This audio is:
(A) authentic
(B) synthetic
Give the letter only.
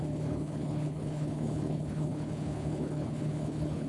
B